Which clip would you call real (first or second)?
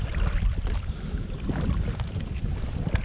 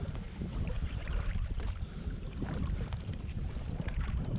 first